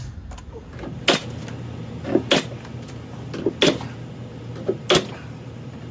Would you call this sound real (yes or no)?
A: yes